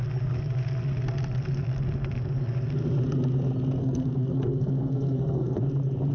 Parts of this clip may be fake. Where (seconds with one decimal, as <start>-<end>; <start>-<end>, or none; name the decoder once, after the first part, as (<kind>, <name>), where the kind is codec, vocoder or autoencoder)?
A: 3.8-5.6 (codec, SNAC)